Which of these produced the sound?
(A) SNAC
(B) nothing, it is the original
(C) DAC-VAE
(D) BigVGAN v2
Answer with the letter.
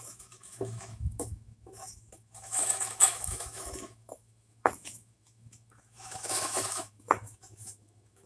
C